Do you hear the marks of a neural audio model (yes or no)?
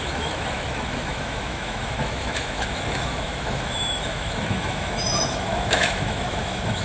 yes